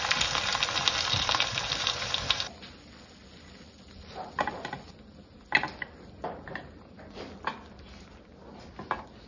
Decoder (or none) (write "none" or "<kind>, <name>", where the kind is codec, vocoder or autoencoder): none